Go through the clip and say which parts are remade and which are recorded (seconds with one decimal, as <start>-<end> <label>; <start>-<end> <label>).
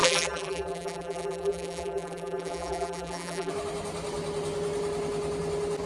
0.0-3.5 remade; 3.5-5.9 recorded